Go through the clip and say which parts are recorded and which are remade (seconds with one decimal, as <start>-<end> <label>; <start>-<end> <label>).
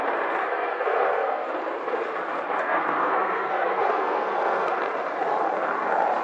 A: 0.0-0.4 recorded; 0.4-1.5 remade; 1.5-2.6 recorded; 2.6-4.8 remade; 4.8-6.2 recorded